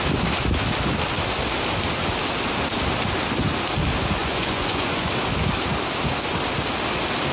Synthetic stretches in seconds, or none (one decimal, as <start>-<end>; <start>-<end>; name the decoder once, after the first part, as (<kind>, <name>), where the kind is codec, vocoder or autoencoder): 4.2-5.1 (vocoder, Vocos)